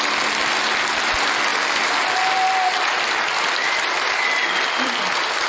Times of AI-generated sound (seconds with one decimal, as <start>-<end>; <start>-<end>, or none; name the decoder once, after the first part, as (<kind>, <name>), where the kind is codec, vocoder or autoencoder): none